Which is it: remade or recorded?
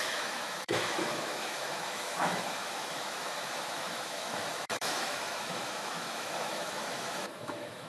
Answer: remade